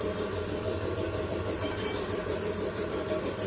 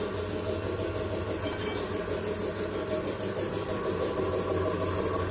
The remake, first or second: first